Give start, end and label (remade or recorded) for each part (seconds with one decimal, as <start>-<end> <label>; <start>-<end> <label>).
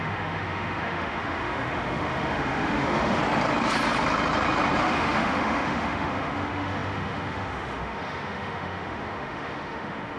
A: 0.0-3.2 remade; 3.2-4.8 recorded; 4.8-10.2 remade